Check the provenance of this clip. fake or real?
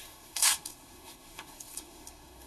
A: fake